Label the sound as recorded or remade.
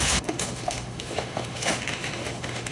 remade